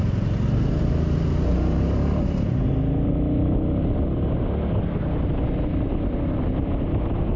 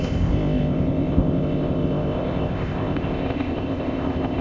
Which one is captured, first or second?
first